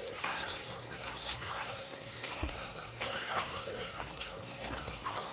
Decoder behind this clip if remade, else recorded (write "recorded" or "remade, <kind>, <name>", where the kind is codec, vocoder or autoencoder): remade, codec, SNAC